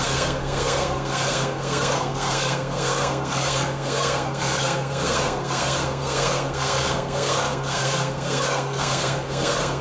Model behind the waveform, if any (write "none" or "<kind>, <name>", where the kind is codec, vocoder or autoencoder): codec, SNAC